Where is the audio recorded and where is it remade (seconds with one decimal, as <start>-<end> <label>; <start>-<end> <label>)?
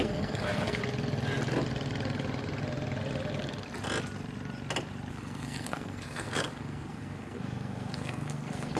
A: 0.0-0.8 remade; 0.8-5.1 recorded; 5.1-8.8 remade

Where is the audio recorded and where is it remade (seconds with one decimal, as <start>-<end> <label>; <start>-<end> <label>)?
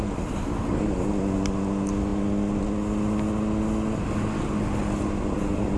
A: 0.0-5.8 recorded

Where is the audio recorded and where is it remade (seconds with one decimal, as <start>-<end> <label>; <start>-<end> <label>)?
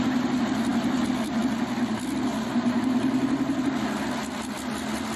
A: 0.0-5.2 recorded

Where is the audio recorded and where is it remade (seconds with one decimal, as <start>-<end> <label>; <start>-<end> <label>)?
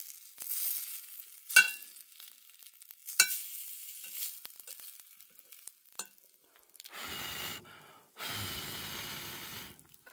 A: 0.0-10.1 recorded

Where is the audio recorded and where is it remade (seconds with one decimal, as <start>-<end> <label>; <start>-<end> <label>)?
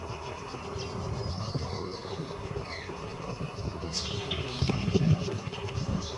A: 0.0-0.6 remade; 0.6-1.3 recorded; 1.3-6.2 remade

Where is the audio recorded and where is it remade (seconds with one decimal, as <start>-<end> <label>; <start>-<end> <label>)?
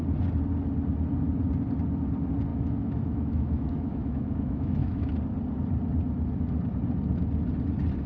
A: 0.0-2.5 recorded; 2.5-5.1 remade; 5.1-8.1 recorded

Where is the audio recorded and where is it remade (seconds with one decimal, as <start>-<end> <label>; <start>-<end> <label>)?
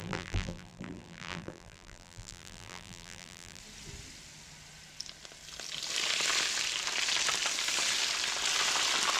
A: 0.0-3.6 remade; 3.6-9.2 recorded